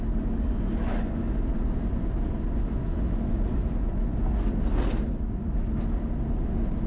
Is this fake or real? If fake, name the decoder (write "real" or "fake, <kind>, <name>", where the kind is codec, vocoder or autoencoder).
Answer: real